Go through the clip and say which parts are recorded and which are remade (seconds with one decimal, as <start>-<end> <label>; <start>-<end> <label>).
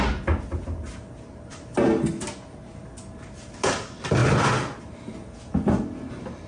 0.0-6.5 recorded